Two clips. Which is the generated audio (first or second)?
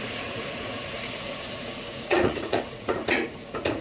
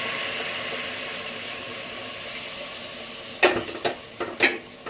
first